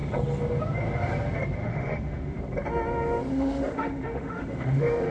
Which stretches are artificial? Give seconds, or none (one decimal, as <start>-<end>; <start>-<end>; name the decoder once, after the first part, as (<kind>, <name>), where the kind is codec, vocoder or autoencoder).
1.6-2.4 (autoencoder, DAC-VAE); 3.3-5.1